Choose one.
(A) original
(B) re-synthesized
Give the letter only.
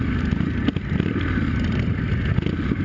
A